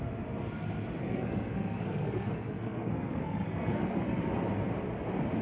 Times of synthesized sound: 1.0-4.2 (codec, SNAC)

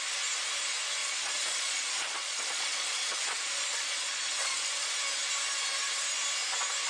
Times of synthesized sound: 1.0-4.9 (vocoder, Vocos)

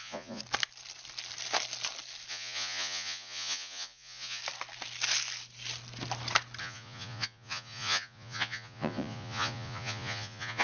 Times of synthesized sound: 0.0-0.4 (vocoder, Vocos); 2.3-4.4; 6.6-10.6

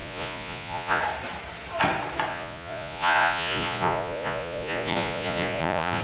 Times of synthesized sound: 0.0-1.0 (vocoder, Vocos); 2.3-6.0

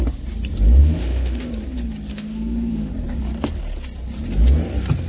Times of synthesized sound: 0.8-1.5 (autoencoder, DAC-VAE); 2.1-2.9

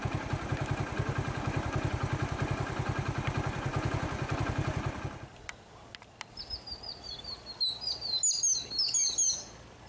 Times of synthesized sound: none